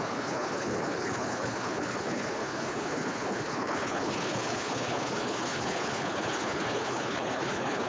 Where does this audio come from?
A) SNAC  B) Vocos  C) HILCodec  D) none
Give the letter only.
C